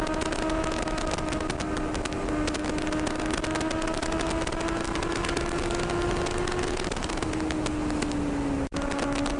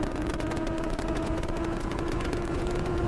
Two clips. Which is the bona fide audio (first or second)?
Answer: first